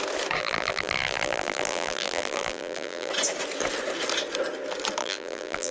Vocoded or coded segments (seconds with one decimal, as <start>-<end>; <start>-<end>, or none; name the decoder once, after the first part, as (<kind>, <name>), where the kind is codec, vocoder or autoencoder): 0.4-3.1 (vocoder, BigVGAN v2); 5.0-5.7

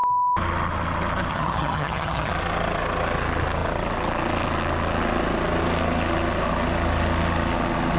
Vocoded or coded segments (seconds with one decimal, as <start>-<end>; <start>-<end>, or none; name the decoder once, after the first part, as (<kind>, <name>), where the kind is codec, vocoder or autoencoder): 1.3-2.3 (vocoder, HiFi-GAN)

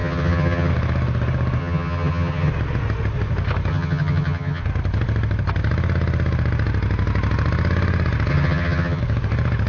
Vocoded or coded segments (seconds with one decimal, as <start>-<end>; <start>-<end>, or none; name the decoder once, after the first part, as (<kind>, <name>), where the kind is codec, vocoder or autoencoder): 0.0-0.7 (vocoder, HiFi-GAN); 1.6-2.5; 3.7-4.6; 8.3-9.0

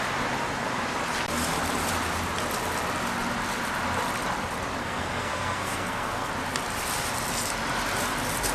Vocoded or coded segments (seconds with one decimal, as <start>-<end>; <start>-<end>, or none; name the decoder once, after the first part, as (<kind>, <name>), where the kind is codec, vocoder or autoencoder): 4.8-6.3 (codec, SNAC)

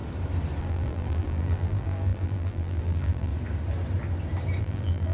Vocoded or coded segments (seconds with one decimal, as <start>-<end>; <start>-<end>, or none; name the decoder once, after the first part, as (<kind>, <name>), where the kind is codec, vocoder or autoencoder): 0.6-3.3 (vocoder, BigVGAN v2); 4.6-5.1

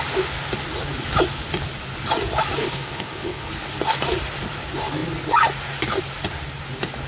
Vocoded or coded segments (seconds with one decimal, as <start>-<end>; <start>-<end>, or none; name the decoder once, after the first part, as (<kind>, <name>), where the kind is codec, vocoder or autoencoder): 2.6-3.5 (codec, HILCodec)